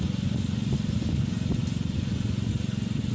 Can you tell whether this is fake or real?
real